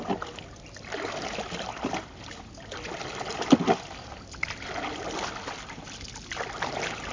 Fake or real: real